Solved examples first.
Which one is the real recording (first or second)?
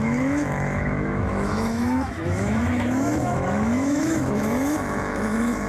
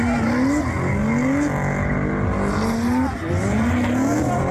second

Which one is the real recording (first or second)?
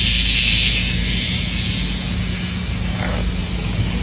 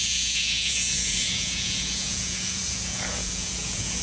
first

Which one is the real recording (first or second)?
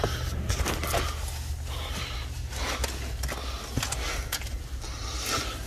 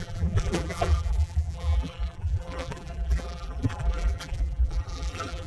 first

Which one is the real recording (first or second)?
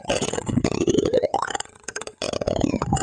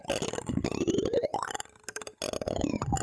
second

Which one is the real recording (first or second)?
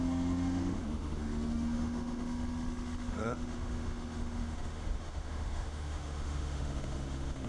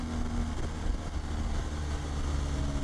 second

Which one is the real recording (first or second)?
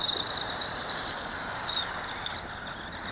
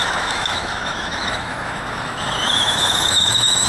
first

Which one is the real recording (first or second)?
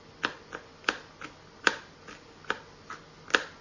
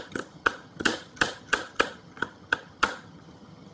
first